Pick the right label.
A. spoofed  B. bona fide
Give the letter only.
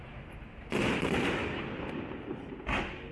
B